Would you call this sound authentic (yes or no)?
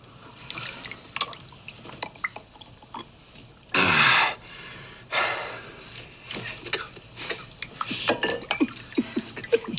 yes